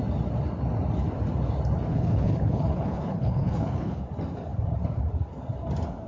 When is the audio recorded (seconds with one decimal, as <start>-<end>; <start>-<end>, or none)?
0.0-1.9; 4.0-6.1

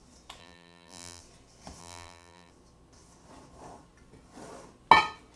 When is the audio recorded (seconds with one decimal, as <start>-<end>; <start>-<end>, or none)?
0.0-0.4; 1.2-1.8; 2.5-5.4